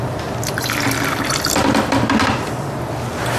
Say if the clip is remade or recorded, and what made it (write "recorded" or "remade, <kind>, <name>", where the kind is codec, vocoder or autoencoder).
recorded